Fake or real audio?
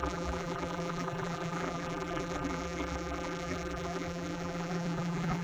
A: fake